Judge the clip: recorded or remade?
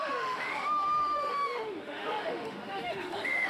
remade